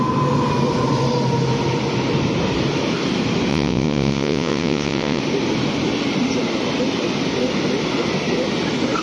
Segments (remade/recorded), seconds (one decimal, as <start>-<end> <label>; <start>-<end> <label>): 0.0-3.5 recorded; 3.5-5.2 remade; 5.2-9.0 recorded